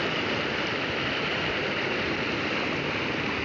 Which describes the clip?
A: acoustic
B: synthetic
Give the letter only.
A